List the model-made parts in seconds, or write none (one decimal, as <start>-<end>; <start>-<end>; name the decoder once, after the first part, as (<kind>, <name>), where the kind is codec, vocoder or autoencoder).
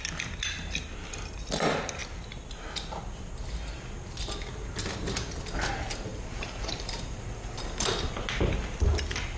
6.1-7.9 (vocoder, BigVGAN v2)